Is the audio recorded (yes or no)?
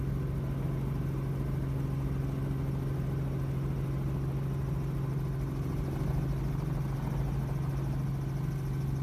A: yes